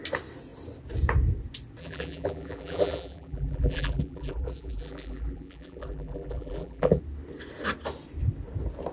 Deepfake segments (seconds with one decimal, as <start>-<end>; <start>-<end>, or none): 1.8-7.0